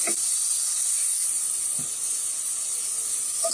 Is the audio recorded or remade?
recorded